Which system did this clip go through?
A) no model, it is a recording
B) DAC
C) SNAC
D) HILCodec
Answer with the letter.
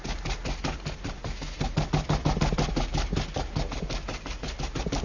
A